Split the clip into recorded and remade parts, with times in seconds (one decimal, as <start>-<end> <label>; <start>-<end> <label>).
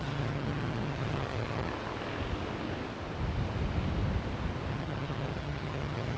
0.0-1.7 remade; 1.7-4.7 recorded; 4.7-6.2 remade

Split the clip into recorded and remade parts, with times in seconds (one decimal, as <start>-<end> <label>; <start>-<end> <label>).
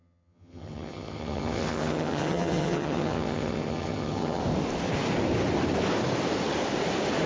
0.0-4.4 remade; 4.4-7.3 recorded